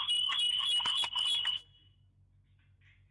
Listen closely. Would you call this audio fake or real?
real